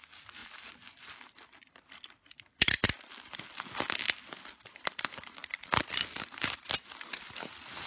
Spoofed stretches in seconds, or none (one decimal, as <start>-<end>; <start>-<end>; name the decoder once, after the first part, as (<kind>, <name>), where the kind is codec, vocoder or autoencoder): none